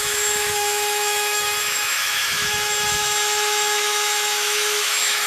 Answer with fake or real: fake